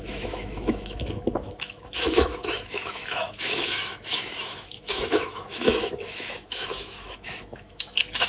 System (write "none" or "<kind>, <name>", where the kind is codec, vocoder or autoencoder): autoencoder, DAC-VAE